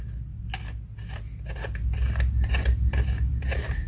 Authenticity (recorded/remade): recorded